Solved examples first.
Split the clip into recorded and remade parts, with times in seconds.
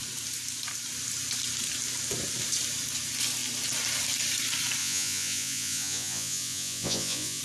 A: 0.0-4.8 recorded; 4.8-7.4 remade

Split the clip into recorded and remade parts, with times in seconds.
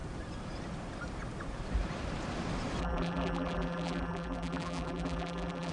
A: 0.0-2.8 recorded; 2.8-5.7 remade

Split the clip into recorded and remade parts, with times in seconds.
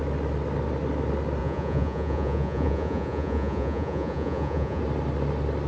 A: 0.0-1.4 recorded; 1.4-4.8 remade; 4.8-5.7 recorded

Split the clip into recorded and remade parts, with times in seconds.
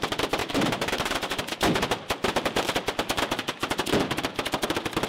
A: 0.0-0.4 recorded; 0.4-1.4 remade; 1.4-5.1 recorded